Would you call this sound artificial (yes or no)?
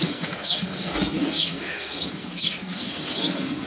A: yes